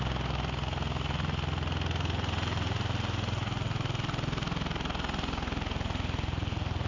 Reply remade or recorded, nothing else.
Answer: recorded